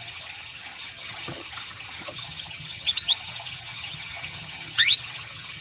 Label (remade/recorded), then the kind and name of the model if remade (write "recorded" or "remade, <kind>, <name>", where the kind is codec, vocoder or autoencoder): remade, vocoder, HiFi-GAN